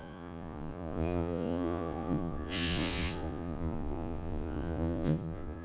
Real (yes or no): no